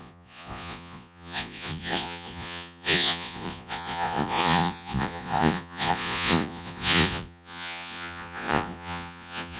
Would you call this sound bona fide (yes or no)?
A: no